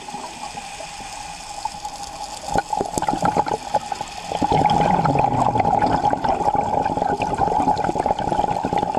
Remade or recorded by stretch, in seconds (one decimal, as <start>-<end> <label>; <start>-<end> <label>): 0.0-9.0 recorded